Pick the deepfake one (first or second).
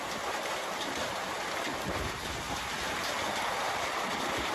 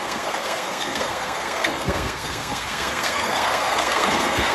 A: second